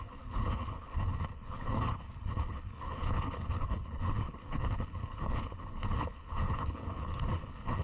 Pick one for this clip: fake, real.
fake